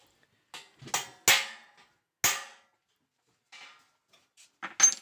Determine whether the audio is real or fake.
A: real